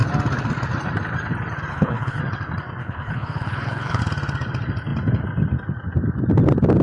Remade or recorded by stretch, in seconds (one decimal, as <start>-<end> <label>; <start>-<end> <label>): 0.0-1.7 recorded; 1.7-2.2 remade; 2.2-2.8 recorded; 2.8-4.0 remade; 4.0-6.8 recorded